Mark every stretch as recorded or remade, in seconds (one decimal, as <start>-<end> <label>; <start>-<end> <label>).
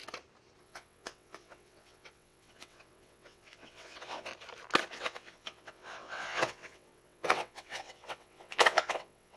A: 0.0-0.6 recorded; 0.6-4.3 remade; 4.3-4.9 recorded; 4.9-9.4 remade